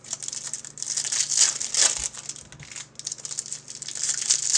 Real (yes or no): yes